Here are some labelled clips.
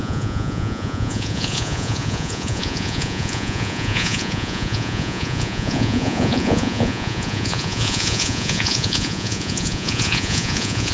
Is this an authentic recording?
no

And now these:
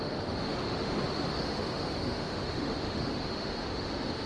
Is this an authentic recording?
no